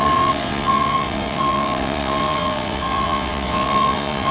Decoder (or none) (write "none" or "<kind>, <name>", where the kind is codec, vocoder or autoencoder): vocoder, WaveNeXt